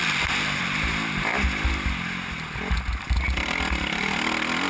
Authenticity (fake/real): real